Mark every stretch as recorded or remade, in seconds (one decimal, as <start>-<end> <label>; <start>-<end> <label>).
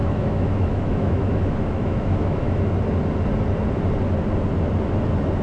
0.0-2.6 remade; 2.6-5.4 recorded